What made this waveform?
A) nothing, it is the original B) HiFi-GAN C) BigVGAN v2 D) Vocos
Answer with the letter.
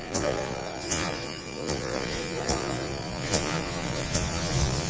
D